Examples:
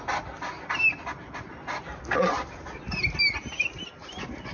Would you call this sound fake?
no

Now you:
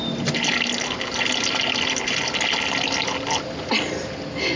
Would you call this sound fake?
no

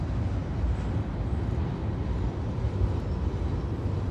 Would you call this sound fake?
no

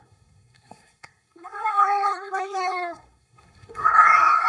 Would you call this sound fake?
yes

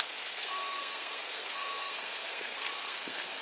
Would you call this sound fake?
yes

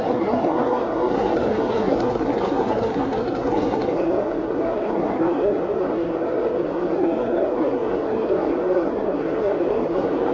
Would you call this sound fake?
yes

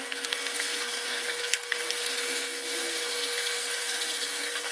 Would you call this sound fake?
yes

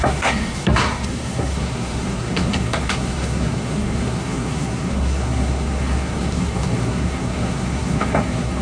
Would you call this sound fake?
yes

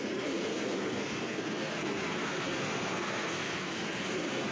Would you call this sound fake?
yes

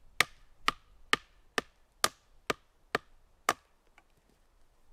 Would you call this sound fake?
no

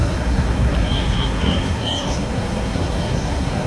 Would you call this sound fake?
yes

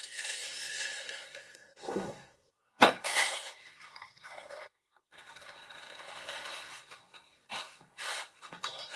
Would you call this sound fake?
yes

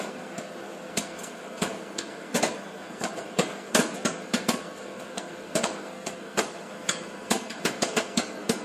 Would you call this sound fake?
yes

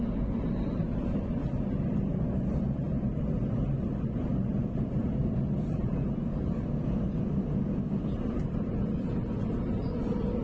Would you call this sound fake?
no